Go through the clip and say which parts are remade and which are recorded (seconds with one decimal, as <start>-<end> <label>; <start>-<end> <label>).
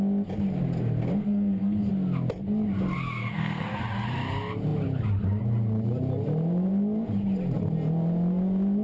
0.0-1.1 recorded; 1.1-1.9 remade; 1.9-3.2 recorded; 3.2-3.8 remade; 3.8-8.8 recorded